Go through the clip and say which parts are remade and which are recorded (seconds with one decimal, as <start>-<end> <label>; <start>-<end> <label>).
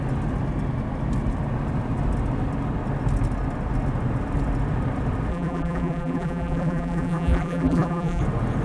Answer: 0.0-5.3 recorded; 5.3-8.2 remade; 8.2-8.6 recorded